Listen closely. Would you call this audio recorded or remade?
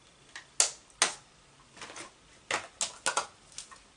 recorded